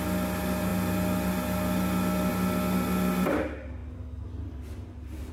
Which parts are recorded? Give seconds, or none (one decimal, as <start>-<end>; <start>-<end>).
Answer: 0.0-5.3